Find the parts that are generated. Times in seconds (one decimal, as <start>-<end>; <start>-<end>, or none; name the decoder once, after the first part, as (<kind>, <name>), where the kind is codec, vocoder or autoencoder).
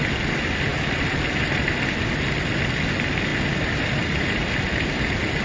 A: none